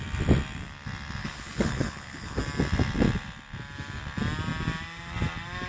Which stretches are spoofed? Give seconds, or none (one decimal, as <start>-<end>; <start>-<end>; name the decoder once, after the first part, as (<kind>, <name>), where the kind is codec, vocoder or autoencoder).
1.2-2.4 (codec, HILCodec)